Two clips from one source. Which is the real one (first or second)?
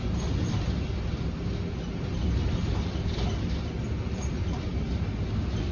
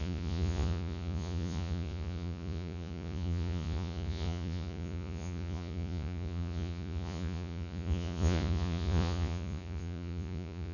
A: first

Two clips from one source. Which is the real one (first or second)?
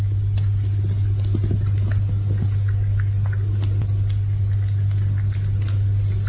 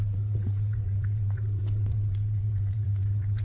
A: first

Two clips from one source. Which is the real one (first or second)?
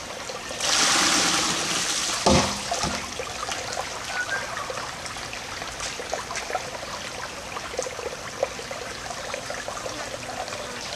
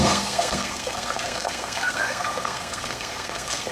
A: first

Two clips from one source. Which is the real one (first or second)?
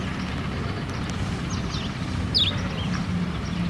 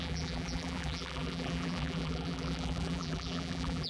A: first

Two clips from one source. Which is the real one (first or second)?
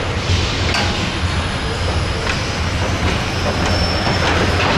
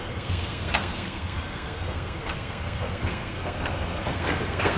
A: first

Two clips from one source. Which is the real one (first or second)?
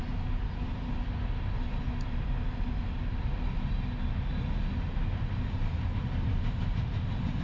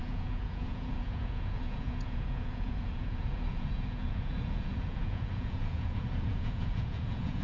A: first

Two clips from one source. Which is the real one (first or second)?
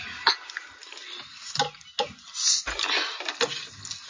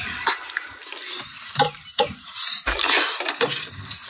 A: first